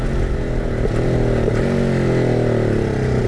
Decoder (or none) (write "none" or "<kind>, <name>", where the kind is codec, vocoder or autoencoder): none